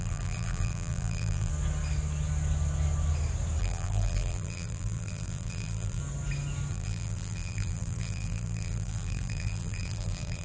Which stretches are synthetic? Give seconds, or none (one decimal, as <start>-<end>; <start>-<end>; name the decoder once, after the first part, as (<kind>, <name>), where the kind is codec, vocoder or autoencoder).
0.0-1.5 (vocoder, BigVGAN v2); 3.6-6.0; 6.7-10.4